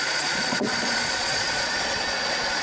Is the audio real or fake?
fake